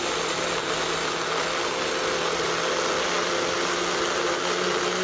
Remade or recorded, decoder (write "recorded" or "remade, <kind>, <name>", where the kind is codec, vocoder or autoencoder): recorded